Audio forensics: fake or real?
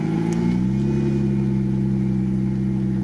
real